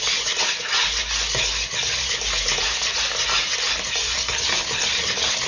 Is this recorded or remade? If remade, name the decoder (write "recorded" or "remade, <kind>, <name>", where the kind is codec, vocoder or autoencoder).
recorded